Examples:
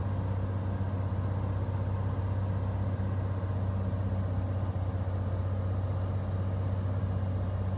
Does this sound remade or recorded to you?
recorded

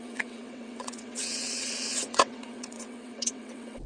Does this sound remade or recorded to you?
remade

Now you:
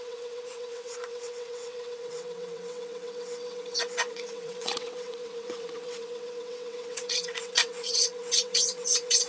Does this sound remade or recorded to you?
remade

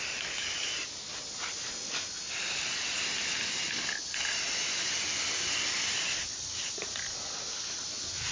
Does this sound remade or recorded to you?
recorded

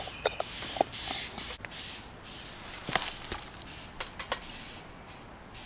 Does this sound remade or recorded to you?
recorded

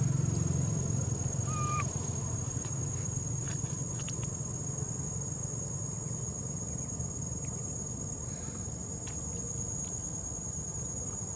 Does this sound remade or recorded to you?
recorded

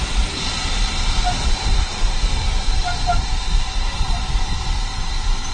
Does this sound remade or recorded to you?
recorded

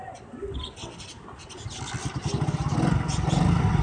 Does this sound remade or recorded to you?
recorded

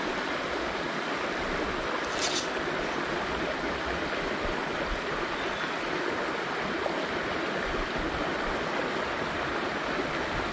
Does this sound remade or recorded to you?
recorded